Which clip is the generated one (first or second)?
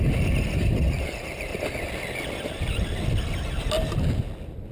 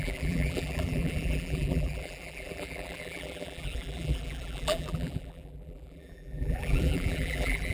second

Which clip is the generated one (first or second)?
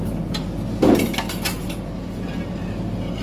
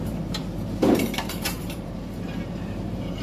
second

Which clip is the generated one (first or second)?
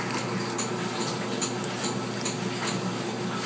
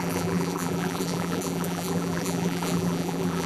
second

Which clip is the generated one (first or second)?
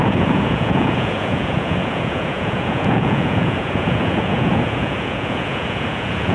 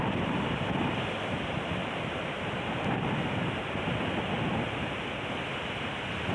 first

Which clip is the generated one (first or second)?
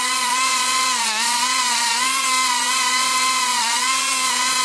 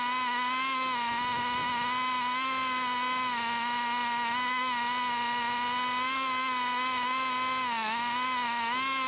first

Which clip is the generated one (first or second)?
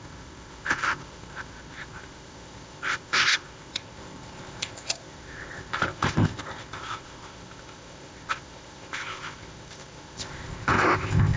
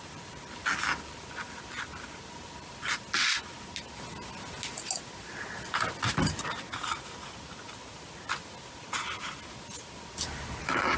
first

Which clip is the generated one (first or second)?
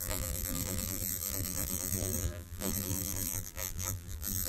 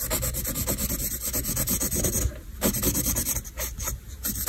first